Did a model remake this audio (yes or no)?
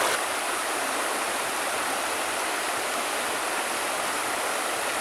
no